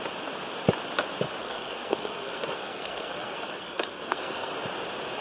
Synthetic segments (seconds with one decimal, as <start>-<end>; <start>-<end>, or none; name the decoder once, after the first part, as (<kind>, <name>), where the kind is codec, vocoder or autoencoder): 1.4-4.5 (codec, SNAC)